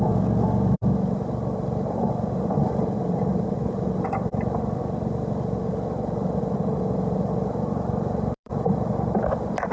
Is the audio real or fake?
fake